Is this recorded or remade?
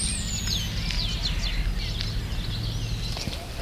recorded